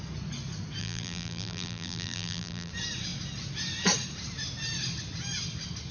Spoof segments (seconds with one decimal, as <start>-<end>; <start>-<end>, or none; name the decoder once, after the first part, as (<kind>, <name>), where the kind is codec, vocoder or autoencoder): 0.8-2.7 (vocoder, BigVGAN v2)